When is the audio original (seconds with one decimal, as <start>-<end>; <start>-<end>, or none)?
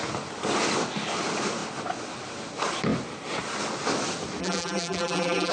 0.0-4.4